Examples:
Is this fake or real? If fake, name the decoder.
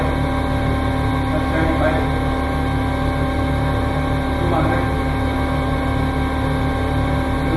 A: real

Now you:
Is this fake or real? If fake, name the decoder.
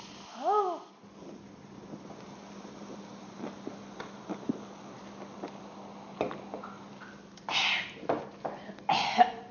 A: real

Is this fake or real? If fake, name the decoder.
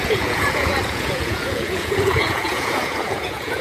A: fake, vocoder, Vocos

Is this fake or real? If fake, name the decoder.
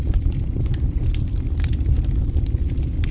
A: real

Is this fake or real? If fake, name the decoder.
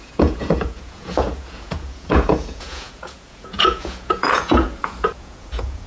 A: fake, vocoder, Vocos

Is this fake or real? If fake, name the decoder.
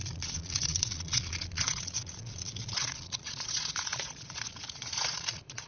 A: fake, vocoder, Vocos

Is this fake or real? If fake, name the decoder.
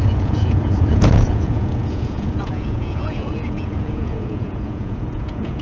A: fake, vocoder, Vocos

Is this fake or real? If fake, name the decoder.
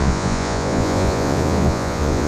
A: fake, vocoder, Vocos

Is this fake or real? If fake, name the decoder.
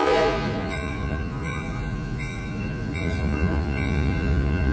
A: fake, vocoder, Vocos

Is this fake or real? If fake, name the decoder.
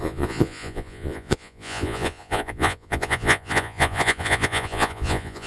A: fake, vocoder, Vocos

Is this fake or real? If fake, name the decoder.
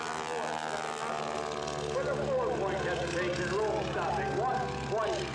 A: real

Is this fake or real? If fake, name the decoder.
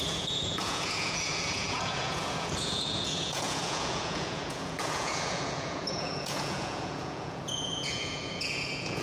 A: fake, vocoder, Vocos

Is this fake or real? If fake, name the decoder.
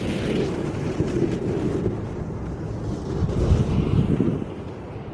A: real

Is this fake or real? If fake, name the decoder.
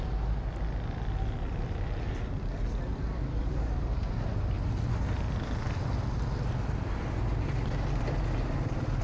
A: real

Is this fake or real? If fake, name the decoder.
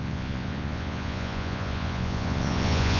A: fake, vocoder, Vocos